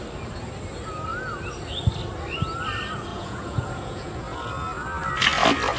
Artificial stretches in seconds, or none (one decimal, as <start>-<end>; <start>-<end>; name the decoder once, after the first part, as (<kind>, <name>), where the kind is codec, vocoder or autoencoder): 3.1-4.5 (vocoder, Vocos)